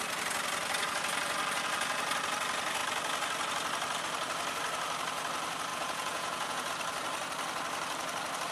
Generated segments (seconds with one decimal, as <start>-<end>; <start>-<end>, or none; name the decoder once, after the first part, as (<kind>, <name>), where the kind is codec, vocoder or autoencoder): 5.7-6.7 (vocoder, Vocos)